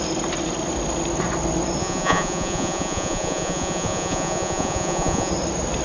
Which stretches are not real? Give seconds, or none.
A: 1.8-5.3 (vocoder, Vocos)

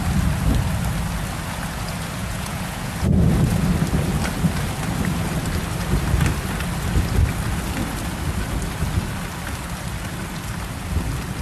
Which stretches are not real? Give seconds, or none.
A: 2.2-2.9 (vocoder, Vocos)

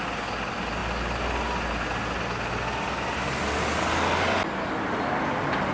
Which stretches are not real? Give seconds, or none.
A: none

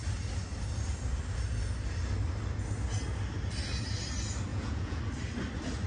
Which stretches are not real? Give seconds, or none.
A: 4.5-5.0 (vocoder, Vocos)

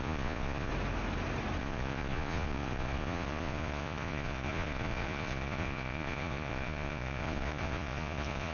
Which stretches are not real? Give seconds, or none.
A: 0.0-0.7 (vocoder, Vocos); 1.6-8.5

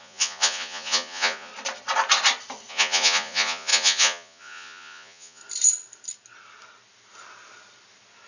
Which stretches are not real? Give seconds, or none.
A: 0.0-1.5 (vocoder, Vocos); 2.7-5.4